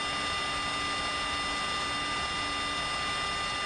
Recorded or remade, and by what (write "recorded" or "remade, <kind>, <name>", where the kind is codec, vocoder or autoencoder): recorded